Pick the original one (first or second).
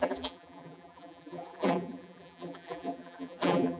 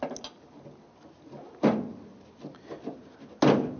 second